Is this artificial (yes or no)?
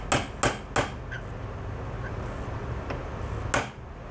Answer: no